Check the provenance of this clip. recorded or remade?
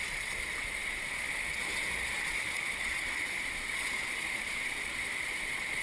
remade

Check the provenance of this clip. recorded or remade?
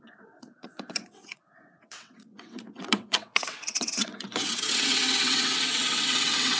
remade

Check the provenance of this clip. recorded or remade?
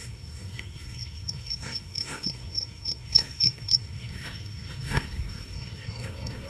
remade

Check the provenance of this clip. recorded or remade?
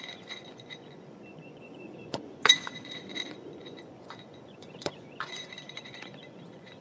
remade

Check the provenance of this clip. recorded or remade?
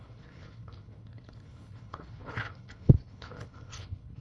remade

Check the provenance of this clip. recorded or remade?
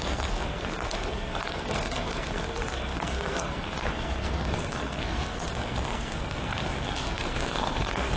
remade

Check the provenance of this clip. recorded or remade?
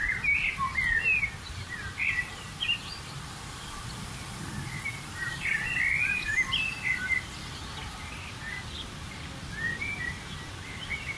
remade